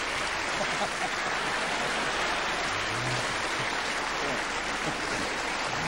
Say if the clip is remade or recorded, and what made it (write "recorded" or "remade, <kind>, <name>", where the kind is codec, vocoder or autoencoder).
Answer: recorded